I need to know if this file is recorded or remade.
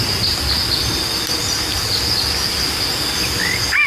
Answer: recorded